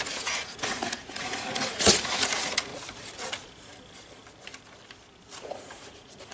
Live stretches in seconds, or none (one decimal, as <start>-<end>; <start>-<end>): 2.7-5.4